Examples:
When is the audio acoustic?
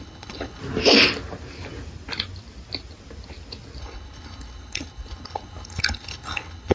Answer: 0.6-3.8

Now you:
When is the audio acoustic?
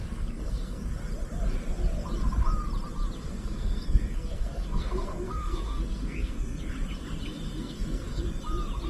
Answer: 0.9-3.3; 6.6-7.6; 8.2-8.9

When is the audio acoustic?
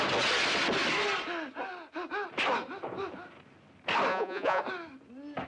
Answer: 0.0-4.1; 4.6-5.5